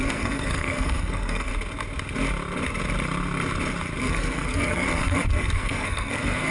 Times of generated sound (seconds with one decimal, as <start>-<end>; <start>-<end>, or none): 0.0-1.5; 4.0-6.5